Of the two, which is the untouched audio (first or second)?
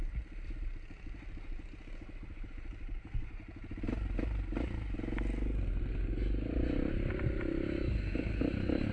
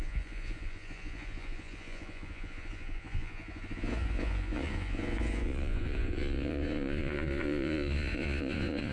first